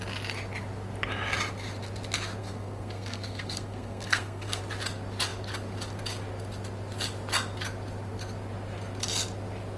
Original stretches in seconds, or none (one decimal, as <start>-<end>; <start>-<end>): 0.0-2.4; 4.6-9.8